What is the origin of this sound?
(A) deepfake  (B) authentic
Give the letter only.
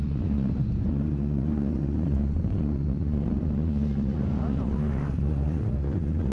A